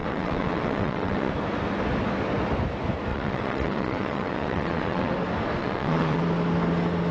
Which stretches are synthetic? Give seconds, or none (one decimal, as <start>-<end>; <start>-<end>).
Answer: 0.0-1.3; 3.1-5.1; 5.6-6.2